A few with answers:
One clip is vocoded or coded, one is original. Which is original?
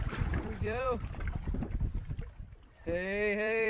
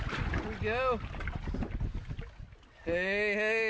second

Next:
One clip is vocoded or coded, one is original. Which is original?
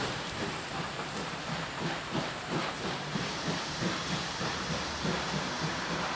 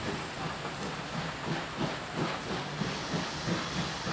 second